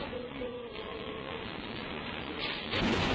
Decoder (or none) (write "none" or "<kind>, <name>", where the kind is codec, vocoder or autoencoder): vocoder, Vocos